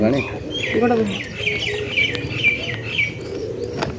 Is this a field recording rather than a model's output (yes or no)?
yes